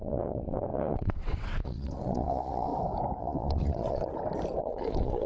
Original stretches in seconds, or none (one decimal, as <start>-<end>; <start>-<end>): 2.7-3.2; 4.1-4.6